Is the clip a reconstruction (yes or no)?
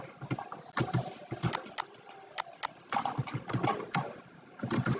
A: no